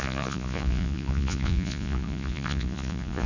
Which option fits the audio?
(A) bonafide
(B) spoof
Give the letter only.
B